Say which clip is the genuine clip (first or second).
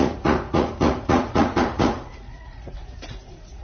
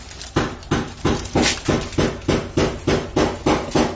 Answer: second